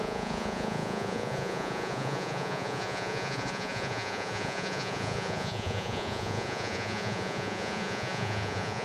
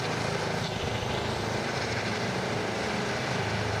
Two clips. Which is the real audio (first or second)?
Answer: second